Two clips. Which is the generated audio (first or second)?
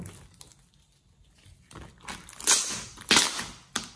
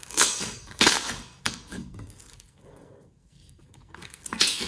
second